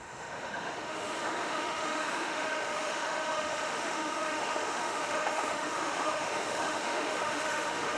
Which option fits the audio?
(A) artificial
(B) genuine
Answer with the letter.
A